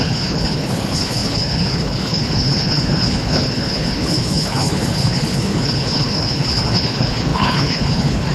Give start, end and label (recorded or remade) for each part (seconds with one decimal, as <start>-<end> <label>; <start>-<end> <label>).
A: 0.0-8.3 remade